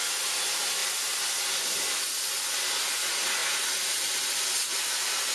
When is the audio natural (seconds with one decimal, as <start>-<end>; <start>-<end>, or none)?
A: 0.0-5.3